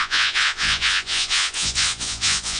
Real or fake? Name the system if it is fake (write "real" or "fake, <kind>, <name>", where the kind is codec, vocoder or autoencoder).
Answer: fake, vocoder, Vocos